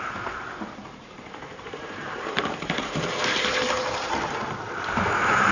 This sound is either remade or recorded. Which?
remade